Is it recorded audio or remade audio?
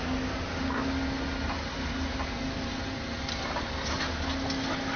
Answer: recorded